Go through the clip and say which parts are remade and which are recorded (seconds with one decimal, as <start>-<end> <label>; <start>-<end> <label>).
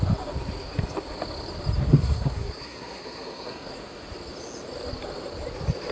0.0-1.9 recorded; 1.9-3.7 remade; 3.7-5.9 recorded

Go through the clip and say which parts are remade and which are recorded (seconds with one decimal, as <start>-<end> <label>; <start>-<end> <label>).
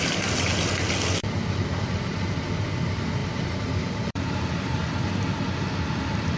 0.0-1.2 recorded; 1.2-2.3 remade; 2.3-3.2 recorded; 3.2-5.1 remade; 5.1-6.4 recorded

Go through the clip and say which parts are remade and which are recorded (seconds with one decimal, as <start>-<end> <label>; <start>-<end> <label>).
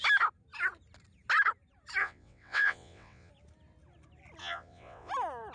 0.0-2.0 recorded; 2.0-3.3 remade; 3.3-4.4 recorded; 4.4-5.1 remade; 5.1-5.5 recorded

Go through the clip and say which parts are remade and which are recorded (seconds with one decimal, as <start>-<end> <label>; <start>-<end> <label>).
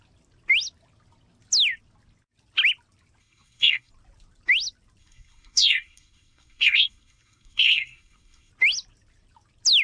0.0-3.2 recorded; 3.2-3.9 remade; 3.9-5.0 recorded; 5.0-8.5 remade; 8.5-9.8 recorded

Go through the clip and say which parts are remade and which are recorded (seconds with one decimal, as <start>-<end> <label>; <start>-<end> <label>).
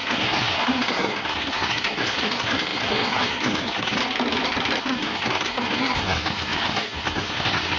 0.0-4.0 remade; 4.0-4.8 recorded; 4.8-7.8 remade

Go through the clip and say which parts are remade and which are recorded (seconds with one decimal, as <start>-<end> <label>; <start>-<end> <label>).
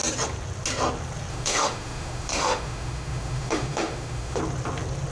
0.0-1.3 recorded; 1.3-4.4 remade; 4.4-5.1 recorded